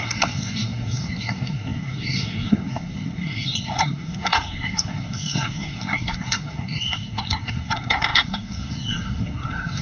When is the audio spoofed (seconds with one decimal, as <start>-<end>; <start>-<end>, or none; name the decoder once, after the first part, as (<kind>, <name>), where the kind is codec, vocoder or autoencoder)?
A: 0.0-9.8 (codec, SNAC)